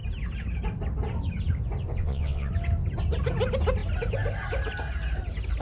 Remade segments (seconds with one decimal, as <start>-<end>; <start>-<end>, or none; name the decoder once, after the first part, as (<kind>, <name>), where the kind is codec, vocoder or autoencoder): 2.0-2.5 (vocoder, WaveNeXt)